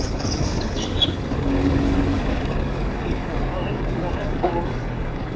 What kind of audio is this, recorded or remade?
remade